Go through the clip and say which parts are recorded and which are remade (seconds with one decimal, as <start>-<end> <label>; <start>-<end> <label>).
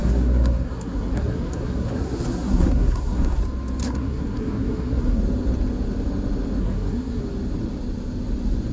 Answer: 0.0-3.4 remade; 3.4-3.8 recorded; 3.8-5.2 remade; 5.2-6.6 recorded; 6.6-7.2 remade; 7.2-8.7 recorded